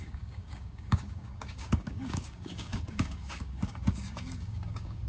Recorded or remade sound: remade